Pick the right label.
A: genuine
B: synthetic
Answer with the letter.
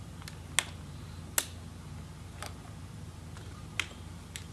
A